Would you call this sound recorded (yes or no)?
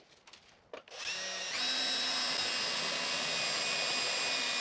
yes